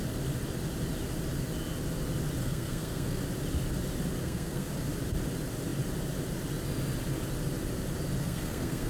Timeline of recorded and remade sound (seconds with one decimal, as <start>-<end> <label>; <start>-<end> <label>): 0.0-2.4 recorded; 2.4-3.2 remade; 3.2-4.2 recorded; 4.2-4.7 remade; 4.7-8.2 recorded; 8.2-8.9 remade